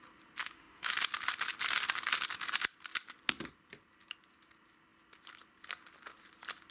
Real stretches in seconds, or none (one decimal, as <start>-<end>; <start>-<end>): 0.0-0.4; 0.9-6.7